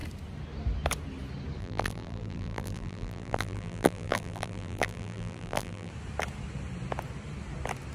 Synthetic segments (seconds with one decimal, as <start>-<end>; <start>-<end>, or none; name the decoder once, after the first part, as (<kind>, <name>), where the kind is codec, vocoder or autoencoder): 1.6-5.9 (vocoder, BigVGAN v2)

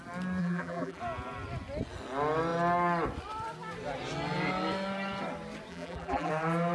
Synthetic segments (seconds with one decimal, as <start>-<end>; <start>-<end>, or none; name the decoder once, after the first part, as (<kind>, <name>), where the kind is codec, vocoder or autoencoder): 0.4-1.0 (vocoder, BigVGAN v2); 5.7-6.3

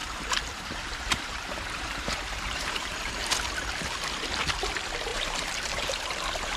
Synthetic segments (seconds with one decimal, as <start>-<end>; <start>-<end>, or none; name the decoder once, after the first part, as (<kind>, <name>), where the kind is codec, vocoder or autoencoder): 0.0-3.1 (vocoder, BigVGAN v2); 5.1-6.6

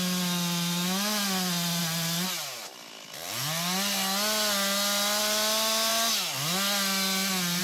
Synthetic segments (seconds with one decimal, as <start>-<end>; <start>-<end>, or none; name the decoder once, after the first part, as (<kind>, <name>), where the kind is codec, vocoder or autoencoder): none

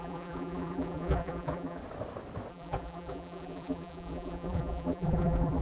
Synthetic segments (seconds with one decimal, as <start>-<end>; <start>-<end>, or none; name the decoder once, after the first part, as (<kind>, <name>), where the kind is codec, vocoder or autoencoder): 0.0-1.8 (vocoder, BigVGAN v2); 2.5-5.6

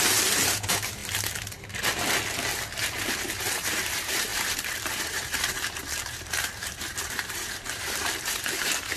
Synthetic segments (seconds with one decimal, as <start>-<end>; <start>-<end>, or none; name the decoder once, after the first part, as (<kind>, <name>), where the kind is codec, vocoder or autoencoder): 0.0-1.0 (vocoder, BigVGAN v2); 3.2-9.0

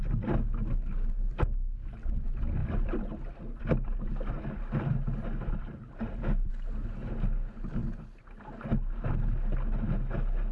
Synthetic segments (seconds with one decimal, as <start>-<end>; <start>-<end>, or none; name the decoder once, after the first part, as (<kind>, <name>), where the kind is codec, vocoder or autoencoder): 2.6-6.5 (vocoder, BigVGAN v2); 7.8-8.4